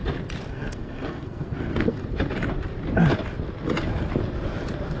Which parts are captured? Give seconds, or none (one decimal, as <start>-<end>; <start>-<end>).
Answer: 0.0-0.5; 2.0-5.0